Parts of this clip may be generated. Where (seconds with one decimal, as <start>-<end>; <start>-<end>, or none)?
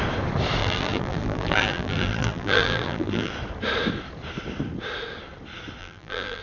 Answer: 0.6-3.3; 5.8-6.4